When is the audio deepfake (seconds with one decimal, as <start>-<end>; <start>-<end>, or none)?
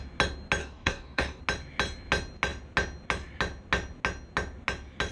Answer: 0.6-1.4